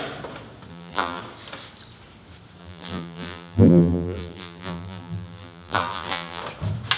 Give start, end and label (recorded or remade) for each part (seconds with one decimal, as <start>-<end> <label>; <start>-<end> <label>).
0.0-0.7 recorded; 0.7-1.2 remade; 1.2-2.6 recorded; 2.6-6.4 remade; 6.4-7.0 recorded